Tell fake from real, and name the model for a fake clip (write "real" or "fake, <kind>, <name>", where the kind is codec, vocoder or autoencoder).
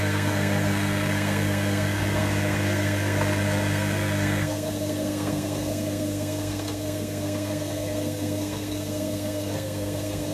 fake, codec, SNAC